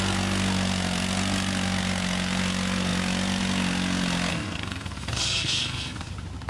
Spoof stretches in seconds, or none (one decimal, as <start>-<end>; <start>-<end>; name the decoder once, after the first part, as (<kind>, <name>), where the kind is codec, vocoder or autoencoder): 4.3-6.1 (codec, SNAC)